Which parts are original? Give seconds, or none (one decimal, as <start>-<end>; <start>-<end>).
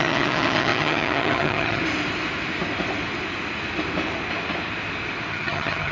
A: 1.8-5.3